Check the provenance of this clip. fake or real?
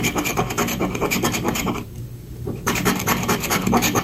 fake